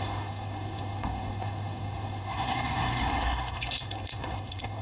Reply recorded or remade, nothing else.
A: remade